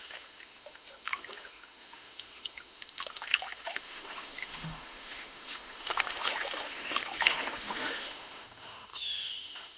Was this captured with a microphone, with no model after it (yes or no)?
no